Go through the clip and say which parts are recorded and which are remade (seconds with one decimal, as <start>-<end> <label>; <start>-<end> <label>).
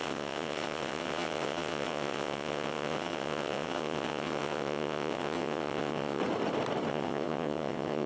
0.0-6.2 remade; 6.2-6.9 recorded; 6.9-8.1 remade